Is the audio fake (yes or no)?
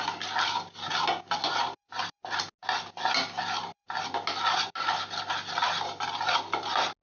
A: no